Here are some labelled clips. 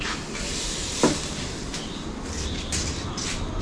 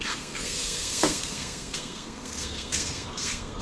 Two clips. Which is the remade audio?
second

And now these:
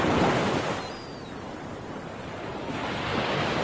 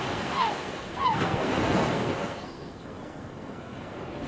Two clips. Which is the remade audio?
second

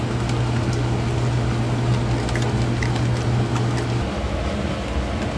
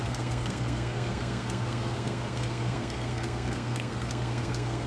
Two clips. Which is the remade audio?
second